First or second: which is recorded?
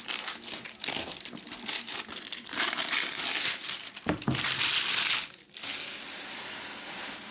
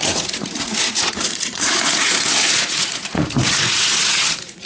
first